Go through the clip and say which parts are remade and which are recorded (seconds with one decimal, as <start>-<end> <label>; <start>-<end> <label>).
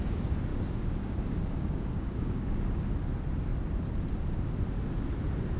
0.0-0.5 recorded; 0.5-2.8 remade; 2.8-5.6 recorded